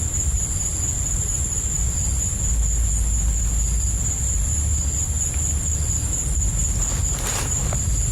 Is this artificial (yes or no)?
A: no